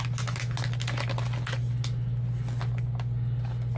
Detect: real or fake real